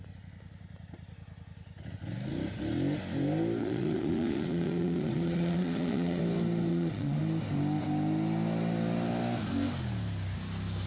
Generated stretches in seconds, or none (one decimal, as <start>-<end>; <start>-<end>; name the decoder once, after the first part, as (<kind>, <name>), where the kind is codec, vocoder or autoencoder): 3.6-6.2 (vocoder, Vocos); 6.7-7.2